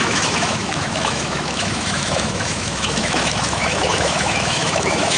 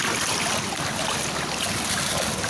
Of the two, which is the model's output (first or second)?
first